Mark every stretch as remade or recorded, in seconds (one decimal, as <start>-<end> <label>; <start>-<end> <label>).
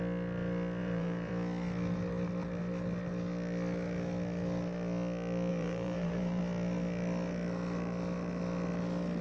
0.0-0.8 recorded; 0.8-1.3 remade; 1.3-5.5 recorded; 5.5-6.4 remade; 6.4-9.2 recorded